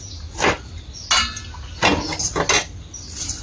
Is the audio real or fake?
real